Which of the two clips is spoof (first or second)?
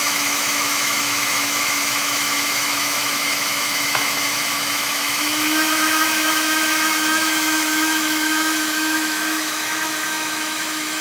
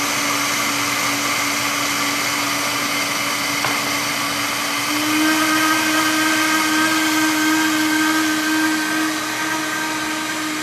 first